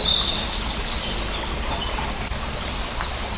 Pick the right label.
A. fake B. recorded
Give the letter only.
B